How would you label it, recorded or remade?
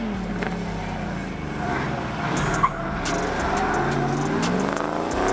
recorded